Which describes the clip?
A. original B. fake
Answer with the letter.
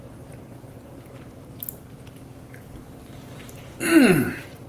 B